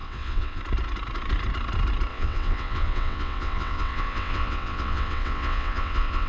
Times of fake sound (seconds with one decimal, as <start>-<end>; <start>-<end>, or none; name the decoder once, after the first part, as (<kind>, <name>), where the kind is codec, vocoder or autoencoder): 0.0-0.6 (vocoder, WaveNeXt); 2.1-6.3